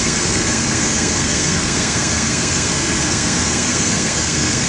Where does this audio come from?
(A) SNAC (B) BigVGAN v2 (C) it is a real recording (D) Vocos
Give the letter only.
A